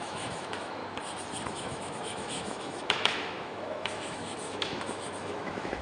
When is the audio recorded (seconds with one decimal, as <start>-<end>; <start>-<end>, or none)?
0.8-1.5